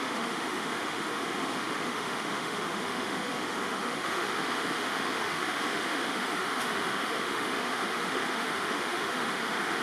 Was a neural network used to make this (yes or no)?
yes